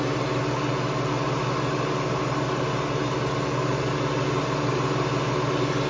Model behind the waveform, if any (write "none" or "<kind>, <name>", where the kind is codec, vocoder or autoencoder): none